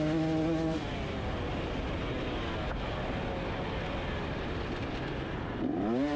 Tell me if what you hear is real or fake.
real